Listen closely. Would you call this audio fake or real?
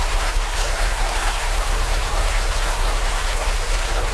fake